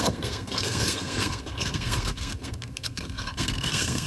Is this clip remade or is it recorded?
remade